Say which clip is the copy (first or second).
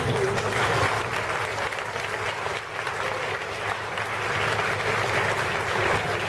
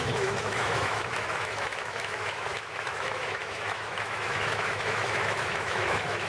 second